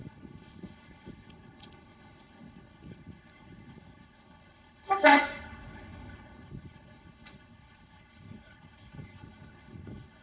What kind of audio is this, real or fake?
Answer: fake